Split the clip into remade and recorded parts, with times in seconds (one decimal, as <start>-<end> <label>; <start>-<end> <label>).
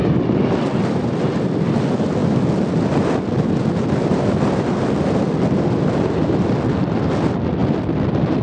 0.0-8.4 recorded